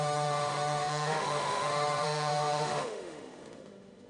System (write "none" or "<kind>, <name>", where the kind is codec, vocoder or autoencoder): autoencoder, DAC-VAE